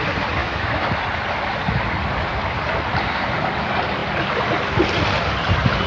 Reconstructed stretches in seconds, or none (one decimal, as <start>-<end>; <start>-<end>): 0.4-0.9